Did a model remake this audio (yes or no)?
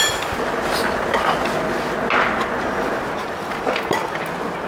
no